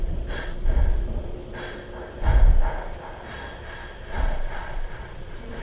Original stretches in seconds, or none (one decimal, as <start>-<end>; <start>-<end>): 1.4-4.1